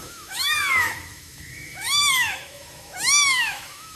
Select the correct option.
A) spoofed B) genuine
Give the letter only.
A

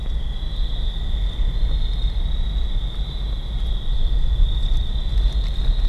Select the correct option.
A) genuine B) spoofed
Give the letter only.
A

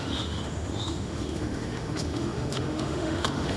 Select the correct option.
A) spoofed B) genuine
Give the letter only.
A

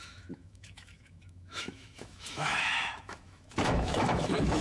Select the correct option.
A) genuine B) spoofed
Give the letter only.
B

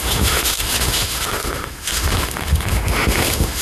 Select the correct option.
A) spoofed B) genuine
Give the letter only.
A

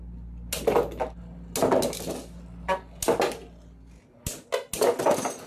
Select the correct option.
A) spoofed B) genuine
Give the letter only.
B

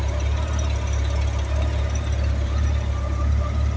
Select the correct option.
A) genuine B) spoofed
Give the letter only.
A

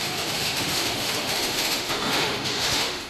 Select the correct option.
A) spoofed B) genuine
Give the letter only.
A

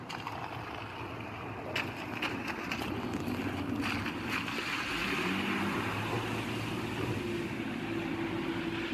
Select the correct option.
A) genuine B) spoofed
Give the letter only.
A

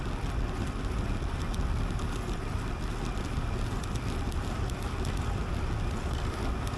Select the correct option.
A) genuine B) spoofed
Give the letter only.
A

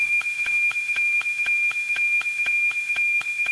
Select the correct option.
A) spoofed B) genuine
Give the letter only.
A